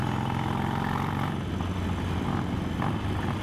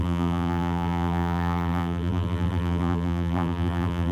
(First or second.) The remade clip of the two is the second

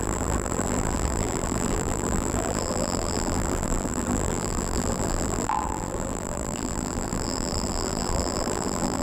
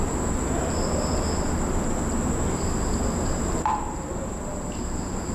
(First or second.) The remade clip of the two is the first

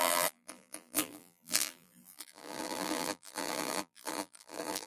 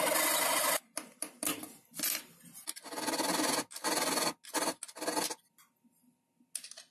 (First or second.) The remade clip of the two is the first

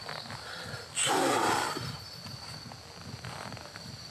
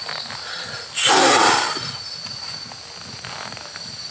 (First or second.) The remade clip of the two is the first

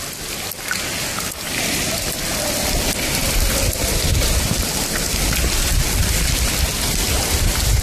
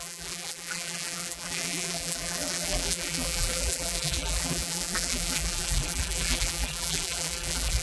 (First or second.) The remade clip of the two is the second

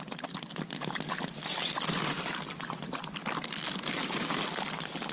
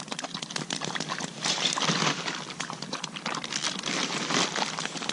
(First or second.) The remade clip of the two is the second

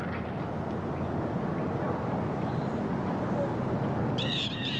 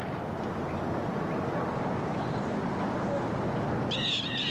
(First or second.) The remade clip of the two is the first